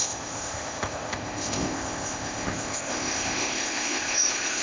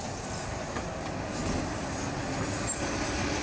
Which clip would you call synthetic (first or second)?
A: first